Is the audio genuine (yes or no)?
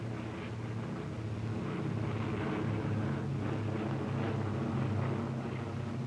yes